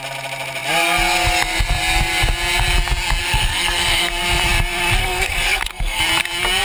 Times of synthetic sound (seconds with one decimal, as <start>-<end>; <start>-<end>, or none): 3.2-4.1; 5.0-6.0